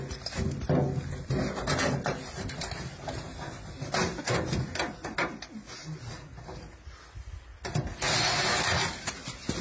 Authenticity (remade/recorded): recorded